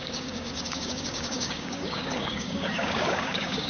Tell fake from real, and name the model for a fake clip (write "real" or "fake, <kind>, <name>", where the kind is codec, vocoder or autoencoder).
fake, codec, DAC